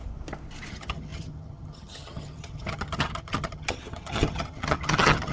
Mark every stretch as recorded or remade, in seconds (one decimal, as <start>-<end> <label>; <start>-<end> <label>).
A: 0.0-0.7 recorded; 0.7-5.3 remade